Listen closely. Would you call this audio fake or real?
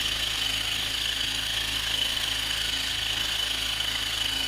fake